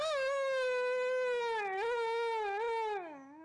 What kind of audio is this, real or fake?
real